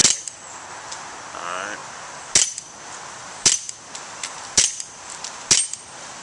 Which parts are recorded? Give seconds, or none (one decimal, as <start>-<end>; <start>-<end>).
0.0-6.2